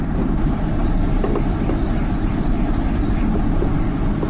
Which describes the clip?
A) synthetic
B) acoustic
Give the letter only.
B